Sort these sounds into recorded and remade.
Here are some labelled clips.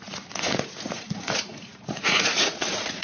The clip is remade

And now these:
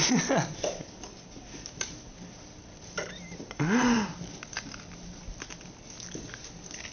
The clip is recorded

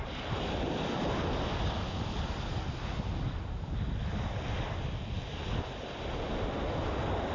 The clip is recorded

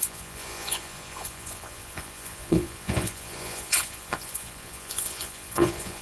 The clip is remade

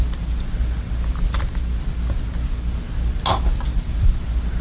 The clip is recorded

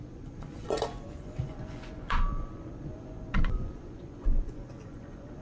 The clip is remade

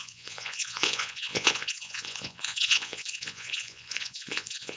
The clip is remade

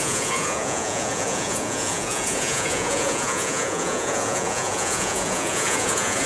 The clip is remade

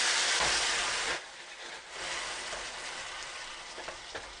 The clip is recorded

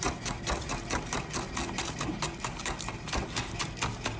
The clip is recorded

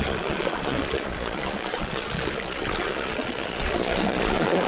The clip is remade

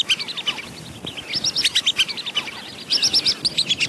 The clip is recorded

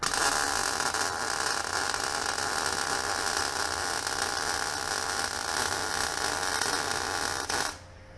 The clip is recorded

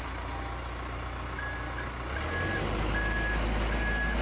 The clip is recorded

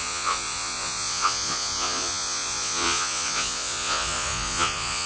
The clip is remade